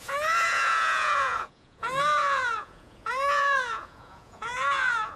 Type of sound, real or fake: fake